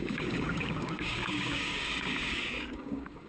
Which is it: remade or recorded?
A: remade